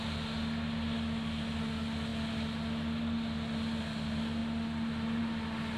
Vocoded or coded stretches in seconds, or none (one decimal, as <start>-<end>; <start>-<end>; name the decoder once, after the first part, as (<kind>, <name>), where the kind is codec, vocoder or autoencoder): none